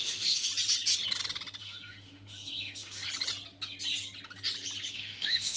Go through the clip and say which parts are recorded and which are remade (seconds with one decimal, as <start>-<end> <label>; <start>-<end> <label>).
0.0-0.5 remade; 0.5-1.6 recorded; 1.6-3.0 remade; 3.0-4.9 recorded; 4.9-5.6 remade